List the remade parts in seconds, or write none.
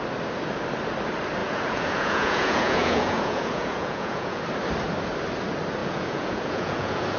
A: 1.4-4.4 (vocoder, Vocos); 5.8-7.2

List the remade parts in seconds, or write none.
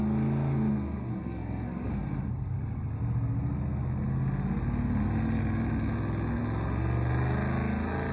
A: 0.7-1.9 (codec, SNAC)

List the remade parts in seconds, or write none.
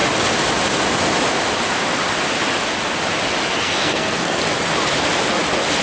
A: 3.5-4.4 (codec, SNAC)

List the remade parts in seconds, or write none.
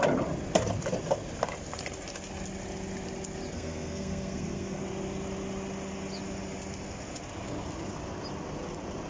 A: 3.5-4.8 (codec, SNAC)